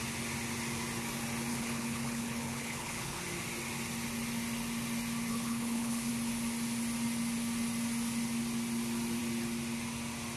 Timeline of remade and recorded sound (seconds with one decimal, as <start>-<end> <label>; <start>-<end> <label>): 0.0-1.5 recorded; 1.5-3.2 remade; 3.2-5.3 recorded; 5.3-6.1 remade; 6.1-10.4 recorded